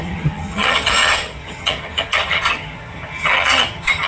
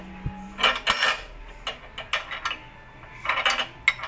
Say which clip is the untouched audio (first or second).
second